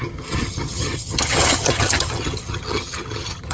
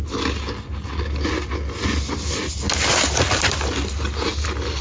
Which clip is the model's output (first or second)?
first